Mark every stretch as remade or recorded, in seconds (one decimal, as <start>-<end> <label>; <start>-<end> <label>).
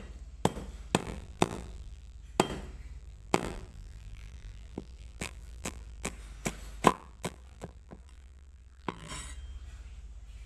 0.0-1.0 recorded; 1.0-2.2 remade; 2.2-3.0 recorded; 3.0-6.1 remade; 6.1-6.9 recorded; 6.9-9.1 remade; 9.1-10.5 recorded